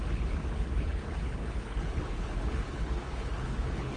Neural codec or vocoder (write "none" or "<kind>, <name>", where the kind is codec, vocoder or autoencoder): codec, HILCodec